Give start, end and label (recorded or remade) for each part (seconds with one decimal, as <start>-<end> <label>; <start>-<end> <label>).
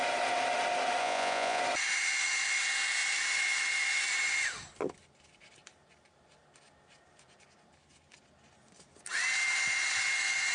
0.0-1.0 recorded; 1.0-1.6 remade; 1.6-10.5 recorded